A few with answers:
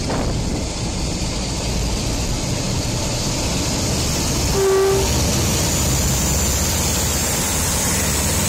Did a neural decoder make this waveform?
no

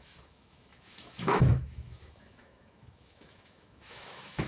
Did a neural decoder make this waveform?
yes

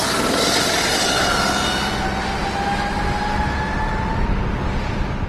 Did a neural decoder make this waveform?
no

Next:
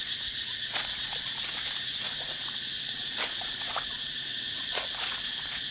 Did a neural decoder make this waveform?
yes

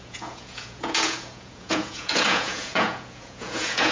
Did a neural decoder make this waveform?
yes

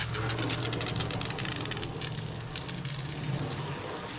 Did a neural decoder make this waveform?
no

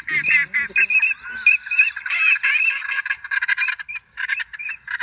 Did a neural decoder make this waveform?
no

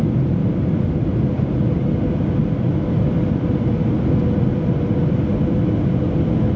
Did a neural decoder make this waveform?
no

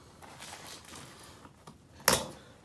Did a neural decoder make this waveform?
no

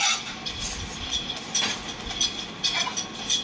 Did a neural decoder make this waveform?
no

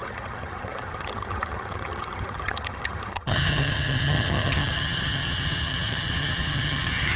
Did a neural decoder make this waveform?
yes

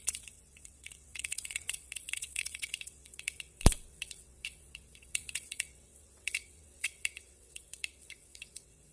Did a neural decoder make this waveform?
yes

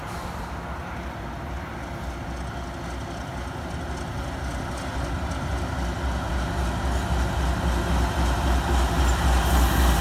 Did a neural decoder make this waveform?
no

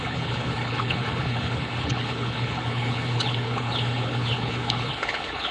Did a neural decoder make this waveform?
yes